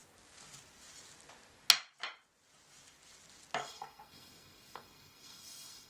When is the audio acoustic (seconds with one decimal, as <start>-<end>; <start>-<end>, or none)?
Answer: 0.0-3.6